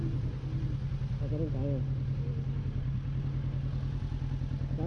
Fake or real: real